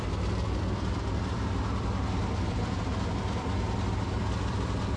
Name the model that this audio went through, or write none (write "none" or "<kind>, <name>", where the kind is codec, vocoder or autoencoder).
vocoder, BigVGAN v2